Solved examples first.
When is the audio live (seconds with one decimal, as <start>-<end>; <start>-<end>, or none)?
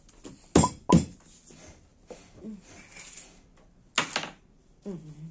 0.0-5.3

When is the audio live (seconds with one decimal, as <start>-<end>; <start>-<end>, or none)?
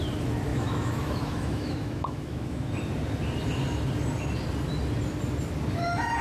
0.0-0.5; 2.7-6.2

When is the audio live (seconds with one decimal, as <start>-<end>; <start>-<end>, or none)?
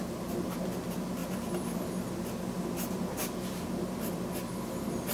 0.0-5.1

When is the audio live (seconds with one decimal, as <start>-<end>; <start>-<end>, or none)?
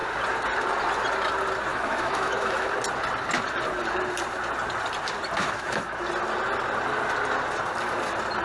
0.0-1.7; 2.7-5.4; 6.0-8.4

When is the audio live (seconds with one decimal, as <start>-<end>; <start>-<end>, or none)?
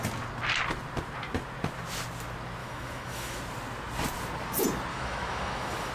0.0-2.6; 3.4-4.9